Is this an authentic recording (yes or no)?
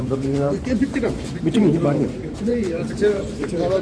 no